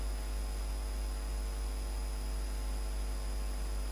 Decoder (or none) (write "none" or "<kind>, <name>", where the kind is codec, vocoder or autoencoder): none